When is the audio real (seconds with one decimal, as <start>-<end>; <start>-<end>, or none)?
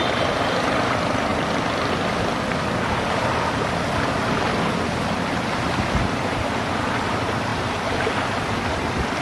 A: 1.3-5.5; 7.5-8.4